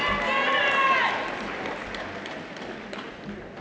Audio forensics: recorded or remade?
recorded